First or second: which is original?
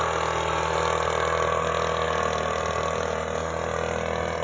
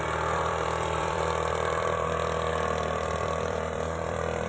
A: first